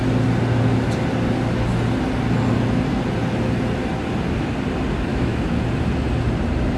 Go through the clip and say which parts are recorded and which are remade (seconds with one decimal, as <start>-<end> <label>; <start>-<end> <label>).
0.0-5.1 recorded; 5.1-5.6 remade; 5.6-6.8 recorded